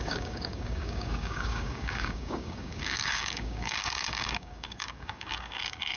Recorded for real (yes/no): no